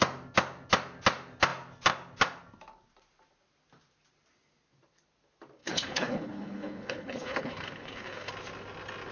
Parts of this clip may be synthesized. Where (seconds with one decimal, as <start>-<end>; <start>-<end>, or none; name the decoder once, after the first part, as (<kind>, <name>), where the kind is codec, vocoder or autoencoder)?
5.6-8.3 (codec, HILCodec)